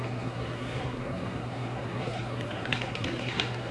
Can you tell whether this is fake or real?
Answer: fake